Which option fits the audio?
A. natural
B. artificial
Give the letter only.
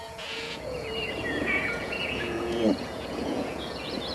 B